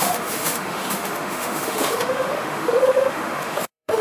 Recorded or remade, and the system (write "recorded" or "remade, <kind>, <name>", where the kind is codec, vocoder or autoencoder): remade, autoencoder, DAC-VAE